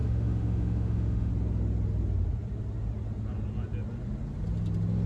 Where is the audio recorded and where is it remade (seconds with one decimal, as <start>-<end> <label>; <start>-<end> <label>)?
0.0-1.3 remade; 1.3-5.1 recorded

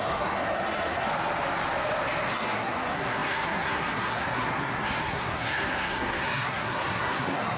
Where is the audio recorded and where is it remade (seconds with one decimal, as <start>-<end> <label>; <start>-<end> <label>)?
0.0-1.1 remade; 1.1-2.3 recorded; 2.3-7.6 remade

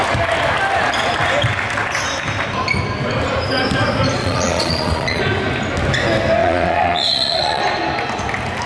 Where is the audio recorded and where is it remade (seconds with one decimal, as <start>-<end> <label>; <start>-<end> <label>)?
0.0-4.2 recorded; 4.2-5.2 remade; 5.2-6.4 recorded; 6.4-7.6 remade; 7.6-8.7 recorded

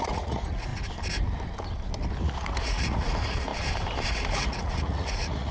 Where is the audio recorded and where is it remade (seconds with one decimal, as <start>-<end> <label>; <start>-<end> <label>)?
0.0-0.7 remade; 0.7-2.2 recorded; 2.2-3.5 remade; 3.5-4.1 recorded; 4.1-5.5 remade

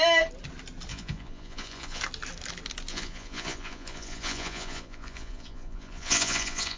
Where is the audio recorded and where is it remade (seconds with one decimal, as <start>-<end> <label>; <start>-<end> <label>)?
0.0-0.9 recorded; 0.9-2.0 remade; 2.0-2.9 recorded; 2.9-6.8 remade

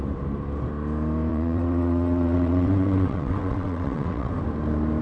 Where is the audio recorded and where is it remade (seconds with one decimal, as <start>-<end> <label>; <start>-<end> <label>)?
0.0-1.3 recorded; 1.3-4.3 remade; 4.3-5.0 recorded

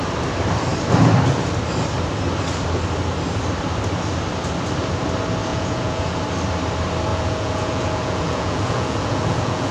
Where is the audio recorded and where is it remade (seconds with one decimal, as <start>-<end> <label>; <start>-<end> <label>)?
0.0-5.5 recorded; 5.5-6.2 remade; 6.2-7.1 recorded; 7.1-9.7 remade